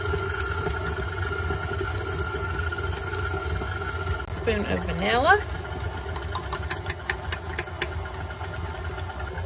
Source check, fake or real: real